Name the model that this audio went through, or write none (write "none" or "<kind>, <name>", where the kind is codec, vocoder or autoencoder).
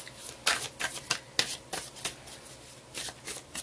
none